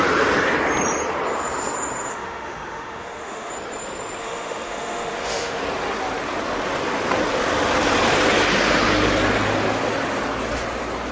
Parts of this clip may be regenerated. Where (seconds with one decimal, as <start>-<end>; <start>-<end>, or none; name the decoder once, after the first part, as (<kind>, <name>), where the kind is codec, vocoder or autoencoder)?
2.1-3.5 (autoencoder, DAC-VAE); 4.2-5.6